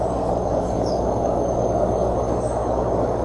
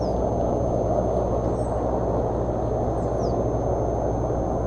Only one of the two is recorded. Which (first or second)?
second